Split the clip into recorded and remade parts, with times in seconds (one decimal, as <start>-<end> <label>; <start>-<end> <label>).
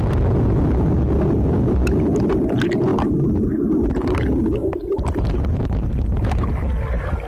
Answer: 0.0-4.6 recorded; 4.6-6.5 remade; 6.5-7.3 recorded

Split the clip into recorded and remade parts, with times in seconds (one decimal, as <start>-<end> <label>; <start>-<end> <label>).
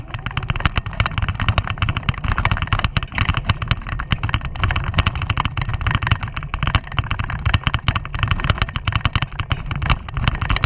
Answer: 0.0-10.7 recorded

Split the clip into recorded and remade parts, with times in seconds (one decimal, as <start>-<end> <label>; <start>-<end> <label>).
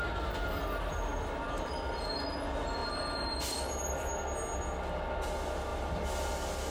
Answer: 0.0-1.1 recorded; 1.1-1.7 remade; 1.7-2.8 recorded; 2.8-4.1 remade; 4.1-5.7 recorded; 5.7-6.3 remade; 6.3-6.7 recorded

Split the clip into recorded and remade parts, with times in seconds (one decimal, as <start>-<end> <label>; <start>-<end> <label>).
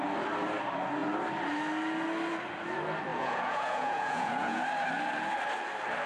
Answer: 0.0-3.1 recorded; 3.1-4.6 remade; 4.6-6.1 recorded